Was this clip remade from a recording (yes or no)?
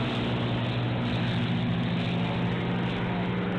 no